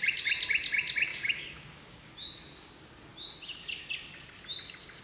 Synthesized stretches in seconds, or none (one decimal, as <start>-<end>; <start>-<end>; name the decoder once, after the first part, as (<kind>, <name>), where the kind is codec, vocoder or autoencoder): 1.1-2.1 (codec, DAC)